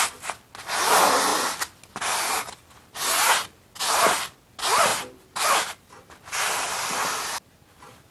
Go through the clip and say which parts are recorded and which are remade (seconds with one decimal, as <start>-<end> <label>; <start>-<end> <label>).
0.0-8.1 recorded